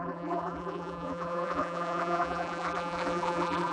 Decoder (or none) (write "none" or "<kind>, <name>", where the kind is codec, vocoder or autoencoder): vocoder, BigVGAN v2